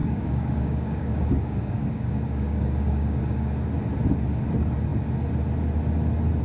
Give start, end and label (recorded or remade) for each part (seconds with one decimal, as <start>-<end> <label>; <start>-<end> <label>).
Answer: 0.0-3.8 remade; 3.8-6.4 recorded